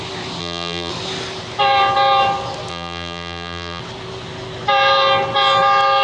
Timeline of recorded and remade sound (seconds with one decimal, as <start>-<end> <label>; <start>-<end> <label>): 0.0-0.4 recorded; 0.4-0.9 remade; 0.9-2.7 recorded; 2.7-3.8 remade; 3.8-6.0 recorded